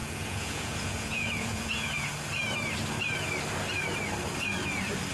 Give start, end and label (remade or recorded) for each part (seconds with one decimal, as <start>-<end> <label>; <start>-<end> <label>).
0.0-2.1 remade; 2.1-5.1 recorded